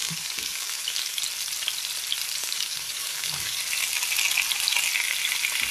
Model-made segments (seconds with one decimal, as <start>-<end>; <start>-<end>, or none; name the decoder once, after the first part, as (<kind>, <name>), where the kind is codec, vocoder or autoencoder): 0.0-1.2 (codec, DAC); 2.4-3.6

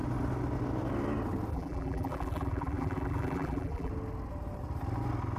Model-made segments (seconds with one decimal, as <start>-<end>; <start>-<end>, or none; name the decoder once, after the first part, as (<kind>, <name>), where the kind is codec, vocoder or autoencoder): 1.5-3.9 (vocoder, BigVGAN v2)

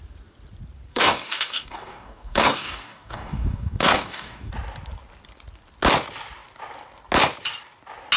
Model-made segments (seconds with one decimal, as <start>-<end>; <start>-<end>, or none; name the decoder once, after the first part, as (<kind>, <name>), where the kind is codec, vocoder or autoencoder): 0.9-4.5 (codec, DAC)

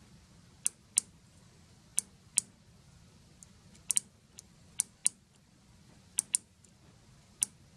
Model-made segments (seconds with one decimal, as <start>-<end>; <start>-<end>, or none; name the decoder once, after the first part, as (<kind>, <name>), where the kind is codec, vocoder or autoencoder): none

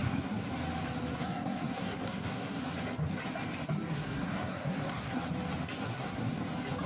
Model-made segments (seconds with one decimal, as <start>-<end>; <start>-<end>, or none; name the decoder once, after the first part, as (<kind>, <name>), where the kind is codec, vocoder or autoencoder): 0.0-0.5 (codec, SNAC); 1.1-2.6; 3.9-5.2; 5.8-6.4

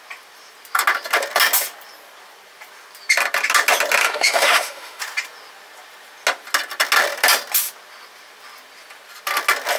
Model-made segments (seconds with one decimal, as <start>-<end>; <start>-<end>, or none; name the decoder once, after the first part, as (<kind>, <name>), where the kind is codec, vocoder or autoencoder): 4.0-5.0 (autoencoder, DAC-VAE)

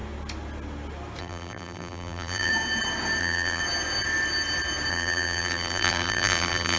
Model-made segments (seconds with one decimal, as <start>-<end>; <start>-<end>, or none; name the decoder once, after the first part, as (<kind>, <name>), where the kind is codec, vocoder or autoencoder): 1.2-2.5 (vocoder, BigVGAN v2); 3.2-3.6; 4.9-6.8